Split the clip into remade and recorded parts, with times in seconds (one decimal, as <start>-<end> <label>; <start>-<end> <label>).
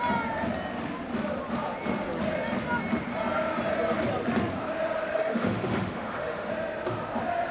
0.0-5.1 recorded; 5.1-6.5 remade; 6.5-7.5 recorded